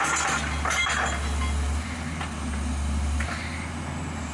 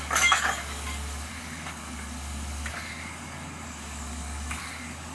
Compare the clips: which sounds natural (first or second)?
first